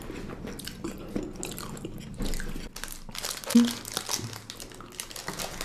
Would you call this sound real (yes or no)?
yes